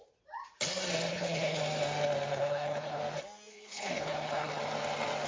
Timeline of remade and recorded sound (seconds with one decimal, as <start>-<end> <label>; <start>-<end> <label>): 0.0-1.1 recorded; 1.1-1.6 remade; 1.6-2.3 recorded; 2.3-3.0 remade; 3.0-3.5 recorded; 3.5-4.6 remade; 4.6-5.3 recorded